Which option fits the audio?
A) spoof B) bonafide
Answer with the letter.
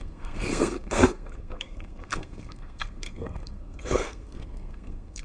A